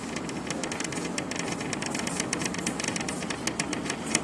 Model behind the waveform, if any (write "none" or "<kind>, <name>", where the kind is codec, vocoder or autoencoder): none